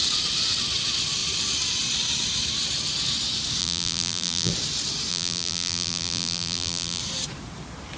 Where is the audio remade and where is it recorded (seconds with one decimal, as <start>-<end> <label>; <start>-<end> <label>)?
0.0-3.6 recorded; 3.6-4.5 remade; 4.5-5.1 recorded; 5.1-7.0 remade; 7.0-8.0 recorded